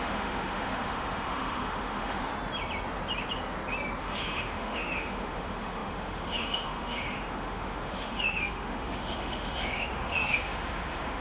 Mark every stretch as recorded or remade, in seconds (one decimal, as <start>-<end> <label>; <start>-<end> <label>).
0.0-2.3 remade; 2.3-4.0 recorded; 4.0-11.2 remade